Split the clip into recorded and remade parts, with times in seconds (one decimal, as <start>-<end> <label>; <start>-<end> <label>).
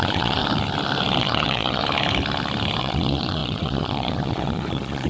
0.0-0.4 remade; 0.4-1.2 recorded; 1.2-1.8 remade; 1.8-2.8 recorded; 2.8-5.1 remade